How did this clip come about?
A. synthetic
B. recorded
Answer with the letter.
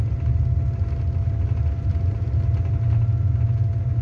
B